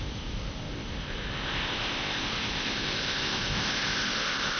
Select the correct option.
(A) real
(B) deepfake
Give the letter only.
B